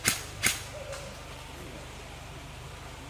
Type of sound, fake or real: real